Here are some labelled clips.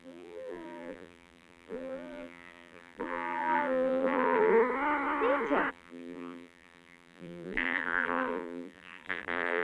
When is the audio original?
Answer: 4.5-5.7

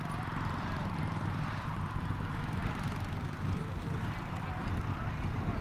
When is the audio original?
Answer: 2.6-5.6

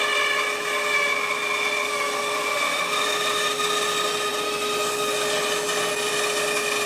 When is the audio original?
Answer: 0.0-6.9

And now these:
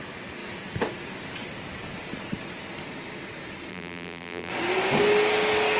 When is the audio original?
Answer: 0.0-3.7; 4.5-5.8